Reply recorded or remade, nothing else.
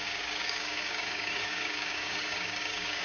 remade